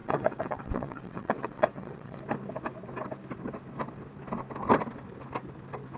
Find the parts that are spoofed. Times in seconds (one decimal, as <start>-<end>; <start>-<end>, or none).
0.0-2.2